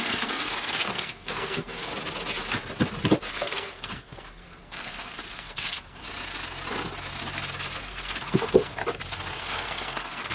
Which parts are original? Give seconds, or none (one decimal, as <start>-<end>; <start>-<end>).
1.9-3.3; 6.0-7.8; 8.8-9.4